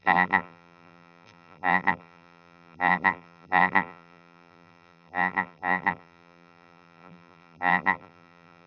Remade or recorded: remade